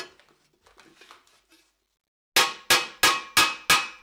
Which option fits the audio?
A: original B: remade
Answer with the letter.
A